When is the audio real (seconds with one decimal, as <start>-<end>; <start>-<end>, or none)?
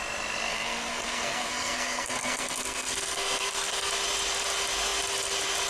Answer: 0.0-0.5; 3.9-5.7